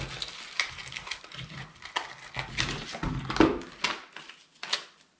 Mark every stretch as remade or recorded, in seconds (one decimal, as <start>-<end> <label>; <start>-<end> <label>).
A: 0.0-5.2 recorded